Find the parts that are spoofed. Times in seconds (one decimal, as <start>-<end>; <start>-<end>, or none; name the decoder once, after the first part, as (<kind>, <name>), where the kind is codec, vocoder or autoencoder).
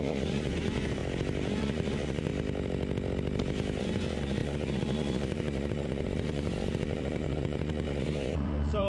0.0-1.0 (vocoder, Vocos); 1.6-2.3; 3.8-8.9